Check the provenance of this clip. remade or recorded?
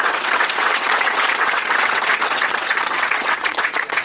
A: remade